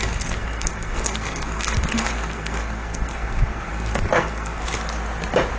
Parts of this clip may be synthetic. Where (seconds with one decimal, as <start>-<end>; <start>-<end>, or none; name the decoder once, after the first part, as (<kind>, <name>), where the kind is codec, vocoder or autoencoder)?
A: 0.0-4.6 (codec, SNAC)